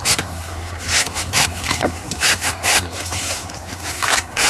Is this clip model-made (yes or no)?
yes